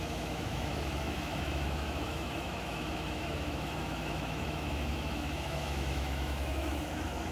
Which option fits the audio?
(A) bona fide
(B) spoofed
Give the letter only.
B